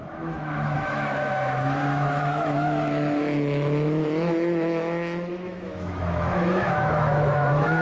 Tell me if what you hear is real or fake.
fake